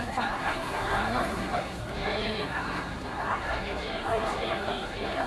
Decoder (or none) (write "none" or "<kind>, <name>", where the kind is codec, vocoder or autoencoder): codec, SNAC